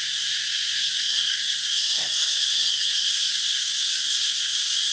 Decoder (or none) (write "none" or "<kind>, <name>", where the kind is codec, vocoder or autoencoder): codec, SNAC